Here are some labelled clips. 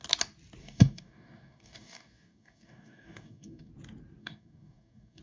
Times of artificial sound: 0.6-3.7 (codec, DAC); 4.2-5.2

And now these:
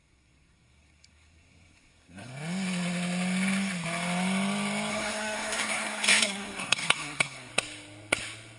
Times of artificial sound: 0.0-2.3 (codec, SNAC); 4.9-7.5

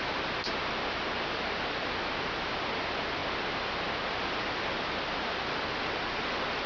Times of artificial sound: none

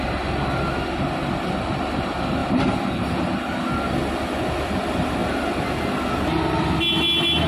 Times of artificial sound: 2.4-2.9 (vocoder, BigVGAN v2)

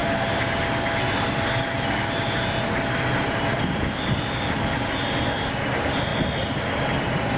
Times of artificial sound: none

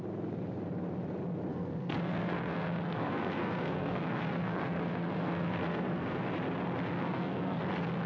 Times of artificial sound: 1.5-6.2 (codec, SNAC); 6.9-7.6

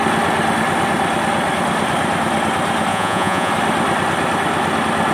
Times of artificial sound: 2.9-3.5 (vocoder, Vocos)

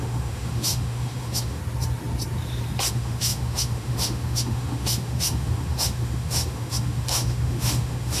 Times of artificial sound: 0.0-1.6 (autoencoder, DAC-VAE); 2.9-8.2